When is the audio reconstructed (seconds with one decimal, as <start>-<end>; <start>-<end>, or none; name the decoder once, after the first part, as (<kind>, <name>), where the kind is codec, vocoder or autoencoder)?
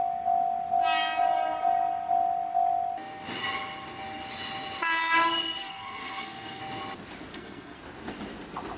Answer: 5.6-6.6 (codec, SNAC); 7.3-7.8